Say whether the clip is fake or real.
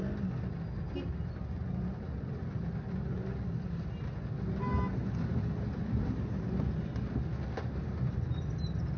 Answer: real